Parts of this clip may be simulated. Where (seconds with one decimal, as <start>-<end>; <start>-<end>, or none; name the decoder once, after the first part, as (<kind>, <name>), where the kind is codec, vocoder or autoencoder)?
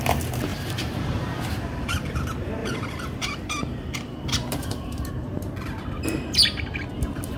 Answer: 0.5-2.2 (vocoder, BigVGAN v2); 2.6-5.1